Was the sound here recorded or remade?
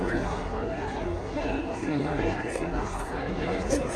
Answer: remade